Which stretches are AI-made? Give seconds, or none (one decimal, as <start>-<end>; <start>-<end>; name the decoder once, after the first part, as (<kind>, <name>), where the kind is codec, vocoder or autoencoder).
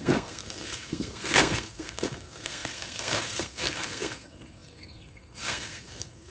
0.0-6.3 (codec, SNAC)